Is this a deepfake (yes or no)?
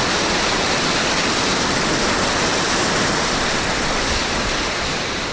no